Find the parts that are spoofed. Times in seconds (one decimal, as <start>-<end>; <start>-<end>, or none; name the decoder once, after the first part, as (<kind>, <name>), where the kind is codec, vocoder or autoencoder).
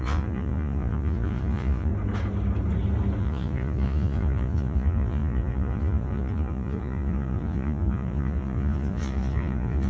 0.0-1.9 (vocoder, Vocos); 3.2-9.9